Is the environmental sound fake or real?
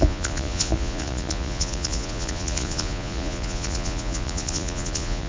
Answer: fake